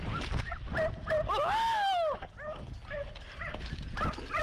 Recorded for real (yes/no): yes